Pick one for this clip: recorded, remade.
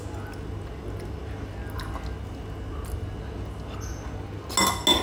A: recorded